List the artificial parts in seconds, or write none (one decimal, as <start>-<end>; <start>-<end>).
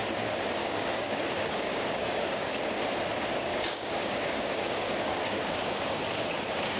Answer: 0.6-2.5; 3.3-6.0